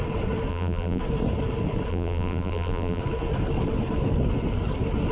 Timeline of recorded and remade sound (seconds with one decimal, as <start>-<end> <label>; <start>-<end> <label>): 0.0-0.5 recorded; 0.5-1.0 remade; 1.0-1.9 recorded; 1.9-3.0 remade; 3.0-5.1 recorded